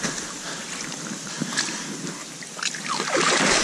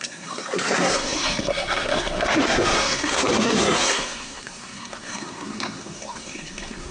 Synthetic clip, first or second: second